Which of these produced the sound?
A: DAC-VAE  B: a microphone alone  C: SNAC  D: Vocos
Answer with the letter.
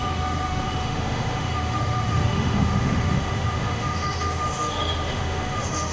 A